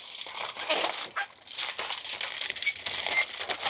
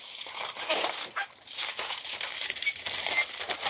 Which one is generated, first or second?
second